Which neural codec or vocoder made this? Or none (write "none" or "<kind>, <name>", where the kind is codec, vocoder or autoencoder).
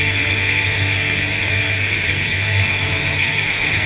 codec, SNAC